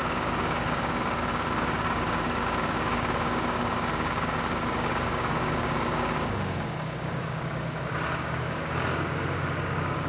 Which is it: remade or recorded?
remade